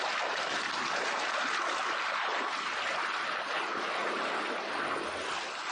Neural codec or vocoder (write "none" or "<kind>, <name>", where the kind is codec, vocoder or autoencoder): none